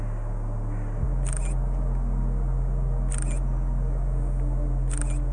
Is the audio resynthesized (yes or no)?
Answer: no